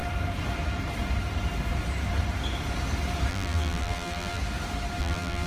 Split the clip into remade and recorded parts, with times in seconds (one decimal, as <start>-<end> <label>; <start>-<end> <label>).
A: 0.0-3.3 recorded; 3.3-4.4 remade; 4.4-5.0 recorded; 5.0-5.5 remade